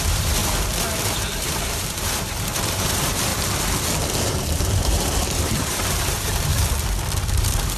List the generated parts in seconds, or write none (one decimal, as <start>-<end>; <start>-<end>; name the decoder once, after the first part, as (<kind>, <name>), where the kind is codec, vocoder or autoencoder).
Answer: 0.0-0.4 (vocoder, BigVGAN v2); 1.0-3.3; 4.3-6.5; 7.3-7.8